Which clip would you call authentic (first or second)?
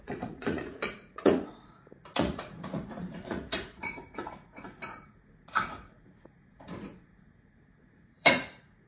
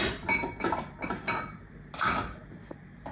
second